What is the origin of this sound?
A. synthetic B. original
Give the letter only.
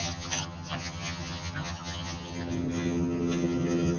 A